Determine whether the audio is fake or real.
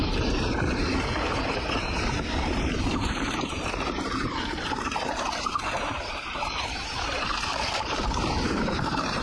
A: fake